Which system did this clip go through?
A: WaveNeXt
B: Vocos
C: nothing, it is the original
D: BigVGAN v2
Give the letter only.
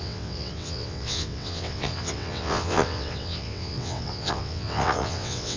A